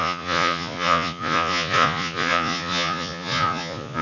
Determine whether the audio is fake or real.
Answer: fake